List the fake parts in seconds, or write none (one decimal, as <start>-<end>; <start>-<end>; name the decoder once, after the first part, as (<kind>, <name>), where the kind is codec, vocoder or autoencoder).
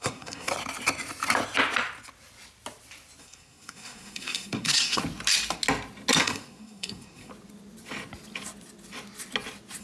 0.0-0.5 (codec, SNAC); 3.2-5.0; 6.2-7.3